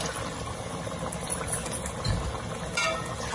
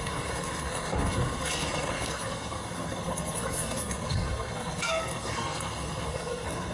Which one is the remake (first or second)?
second